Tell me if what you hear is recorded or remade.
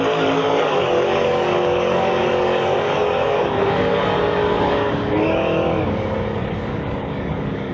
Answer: remade